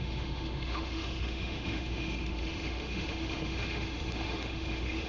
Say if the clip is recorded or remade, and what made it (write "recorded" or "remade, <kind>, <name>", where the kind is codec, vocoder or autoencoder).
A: remade, autoencoder, DAC-VAE